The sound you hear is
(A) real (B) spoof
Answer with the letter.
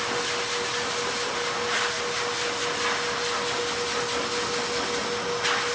A